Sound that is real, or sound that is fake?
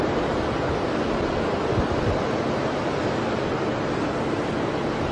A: real